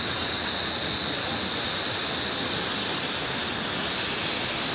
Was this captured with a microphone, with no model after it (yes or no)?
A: yes